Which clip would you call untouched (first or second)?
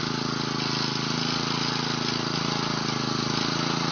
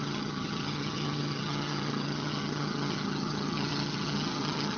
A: first